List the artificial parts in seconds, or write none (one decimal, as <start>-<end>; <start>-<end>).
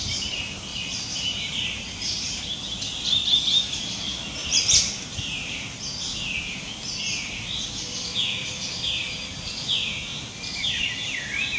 0.7-2.4; 4.4-5.8